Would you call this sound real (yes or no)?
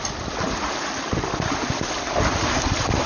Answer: yes